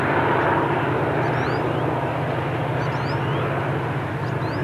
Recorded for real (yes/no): yes